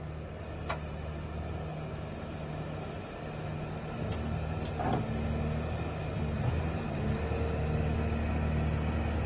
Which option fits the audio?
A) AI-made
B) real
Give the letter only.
B